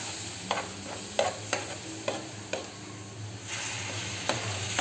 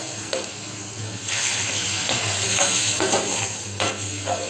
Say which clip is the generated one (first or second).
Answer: second